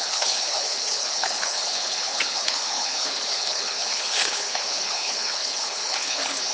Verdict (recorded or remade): remade